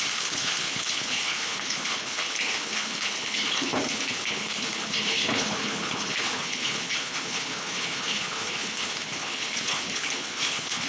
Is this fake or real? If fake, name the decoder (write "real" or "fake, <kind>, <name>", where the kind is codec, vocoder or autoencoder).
fake, codec, HILCodec